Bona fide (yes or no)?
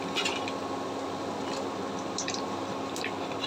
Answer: yes